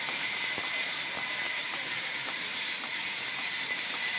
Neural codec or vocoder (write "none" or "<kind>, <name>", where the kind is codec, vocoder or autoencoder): vocoder, BigVGAN v2